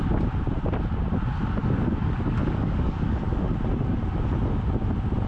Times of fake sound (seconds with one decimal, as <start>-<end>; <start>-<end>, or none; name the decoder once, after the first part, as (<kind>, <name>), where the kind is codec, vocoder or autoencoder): 1.6-3.4 (codec, DAC)